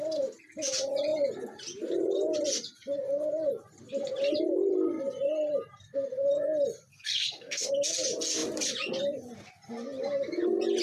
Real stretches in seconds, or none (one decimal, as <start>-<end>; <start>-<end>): 0.0-6.9; 7.7-10.8